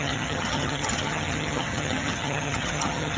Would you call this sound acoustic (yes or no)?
no